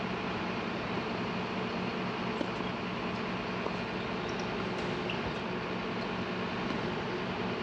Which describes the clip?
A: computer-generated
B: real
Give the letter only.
B